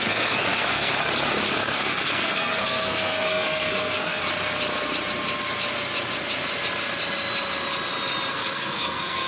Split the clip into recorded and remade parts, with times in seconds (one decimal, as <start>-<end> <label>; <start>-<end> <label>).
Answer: 0.0-0.9 remade; 0.9-1.5 recorded; 1.5-4.2 remade; 4.2-8.3 recorded; 8.3-9.3 remade